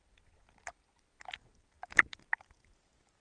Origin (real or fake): real